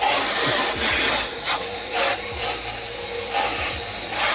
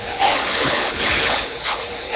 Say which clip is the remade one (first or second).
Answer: second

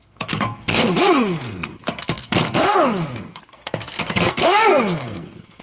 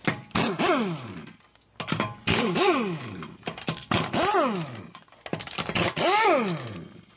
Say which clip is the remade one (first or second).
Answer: first